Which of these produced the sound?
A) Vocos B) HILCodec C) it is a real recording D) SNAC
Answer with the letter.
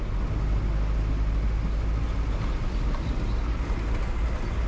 C